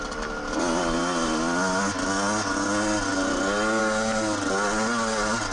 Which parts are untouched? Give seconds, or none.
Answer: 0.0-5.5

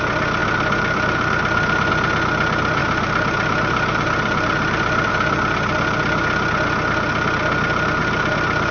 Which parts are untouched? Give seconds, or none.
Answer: 0.0-0.4; 1.9-2.8; 5.1-8.0

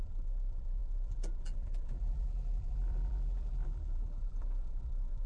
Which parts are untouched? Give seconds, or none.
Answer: none

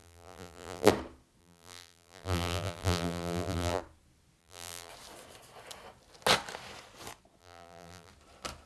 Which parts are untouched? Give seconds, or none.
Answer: 0.9-1.4; 3.8-4.4; 4.9-7.4; 8.1-8.7

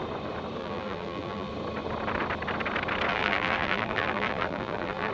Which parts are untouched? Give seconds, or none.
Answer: 0.0-0.6; 1.5-3.1